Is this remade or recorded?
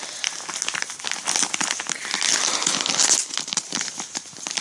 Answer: recorded